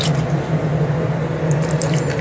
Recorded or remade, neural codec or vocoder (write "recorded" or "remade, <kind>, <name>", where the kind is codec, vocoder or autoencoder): recorded